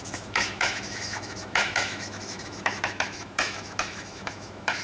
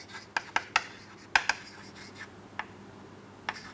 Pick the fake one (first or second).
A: first